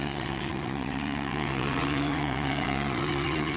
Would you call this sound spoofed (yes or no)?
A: yes